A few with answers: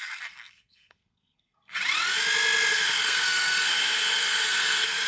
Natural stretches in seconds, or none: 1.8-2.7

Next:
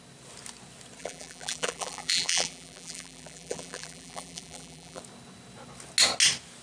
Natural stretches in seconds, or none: 0.0-1.0; 5.0-6.6